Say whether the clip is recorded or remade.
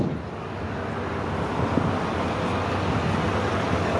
recorded